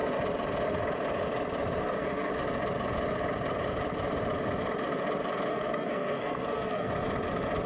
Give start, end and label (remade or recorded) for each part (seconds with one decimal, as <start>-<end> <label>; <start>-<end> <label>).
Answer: 0.0-1.8 recorded; 1.8-2.3 remade; 2.3-5.5 recorded; 5.5-6.9 remade; 6.9-7.7 recorded